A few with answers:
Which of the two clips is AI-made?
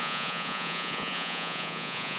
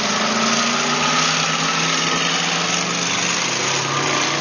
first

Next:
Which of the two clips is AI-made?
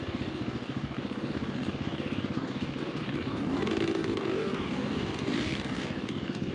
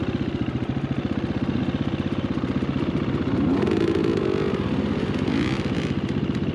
first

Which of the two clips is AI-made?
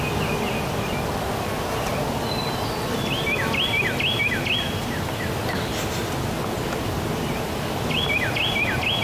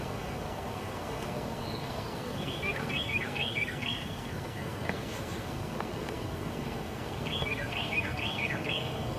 second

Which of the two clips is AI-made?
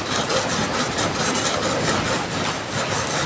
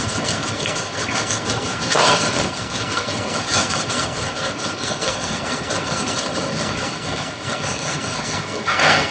second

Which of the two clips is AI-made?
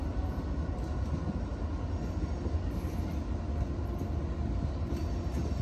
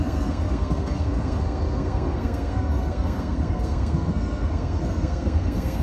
second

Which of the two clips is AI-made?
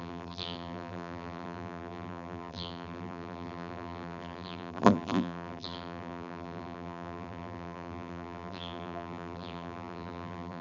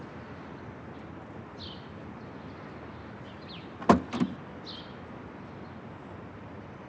first